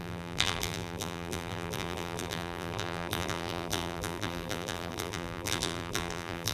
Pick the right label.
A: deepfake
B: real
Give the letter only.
A